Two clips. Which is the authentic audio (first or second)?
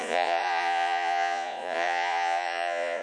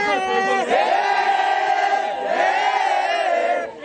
second